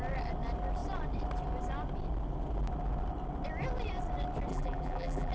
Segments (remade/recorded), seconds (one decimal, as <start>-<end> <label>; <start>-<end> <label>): 0.0-4.5 recorded; 4.5-5.3 remade